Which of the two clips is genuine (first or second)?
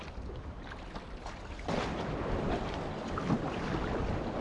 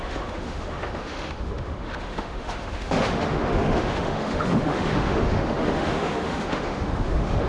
first